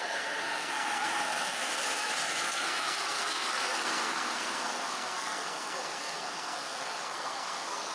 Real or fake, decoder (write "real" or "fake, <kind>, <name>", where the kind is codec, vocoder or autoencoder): fake, codec, SNAC